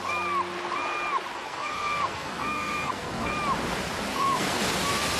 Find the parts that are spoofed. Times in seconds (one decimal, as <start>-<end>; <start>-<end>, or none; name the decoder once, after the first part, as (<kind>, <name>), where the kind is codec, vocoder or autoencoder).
1.3-3.3 (codec, SNAC); 4.1-4.6